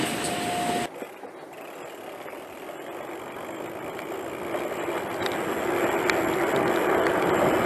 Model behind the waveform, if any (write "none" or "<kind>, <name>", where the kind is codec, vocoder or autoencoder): none